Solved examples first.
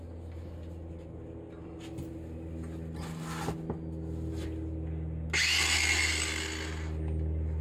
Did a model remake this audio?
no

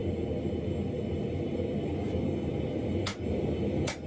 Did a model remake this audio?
no